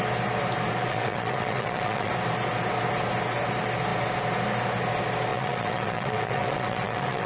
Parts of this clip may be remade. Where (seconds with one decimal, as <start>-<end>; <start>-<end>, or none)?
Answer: 0.8-2.1; 5.3-7.3